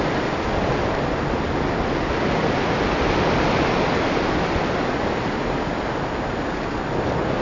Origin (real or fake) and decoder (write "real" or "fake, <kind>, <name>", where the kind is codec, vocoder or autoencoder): real